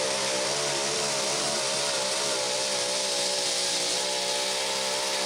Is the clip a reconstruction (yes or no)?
no